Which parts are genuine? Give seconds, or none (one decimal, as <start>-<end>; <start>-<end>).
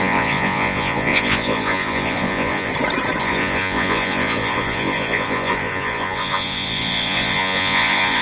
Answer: 2.7-3.2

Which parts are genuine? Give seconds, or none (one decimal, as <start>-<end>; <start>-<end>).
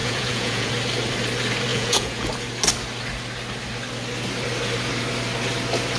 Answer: 0.7-1.7; 2.3-6.0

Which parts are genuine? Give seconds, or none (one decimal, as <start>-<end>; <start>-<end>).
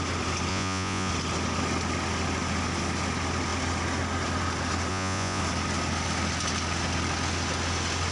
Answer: 0.0-0.5; 1.1-4.9; 5.4-8.1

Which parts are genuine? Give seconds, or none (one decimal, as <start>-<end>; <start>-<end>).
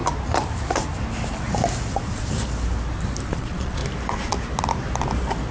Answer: 0.0-3.3; 3.8-5.5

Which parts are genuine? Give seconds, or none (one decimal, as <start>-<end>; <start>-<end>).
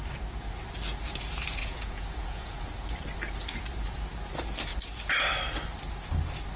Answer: 0.0-1.6; 2.7-6.6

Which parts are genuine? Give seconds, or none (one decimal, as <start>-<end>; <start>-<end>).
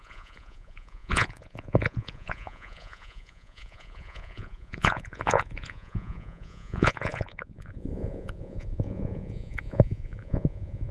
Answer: none